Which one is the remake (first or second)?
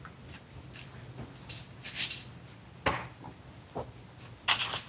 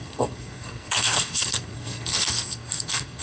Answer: second